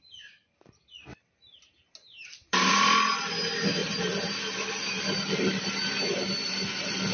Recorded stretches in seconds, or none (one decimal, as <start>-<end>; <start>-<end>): 0.0-2.0; 2.7-7.1